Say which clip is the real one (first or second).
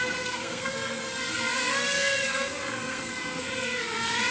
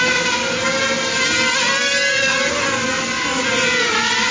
second